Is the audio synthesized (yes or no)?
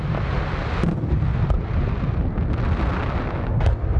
no